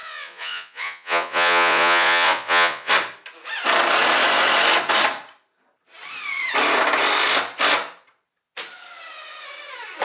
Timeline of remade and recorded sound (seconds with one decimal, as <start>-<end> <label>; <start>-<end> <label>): 0.0-2.9 remade; 2.9-10.0 recorded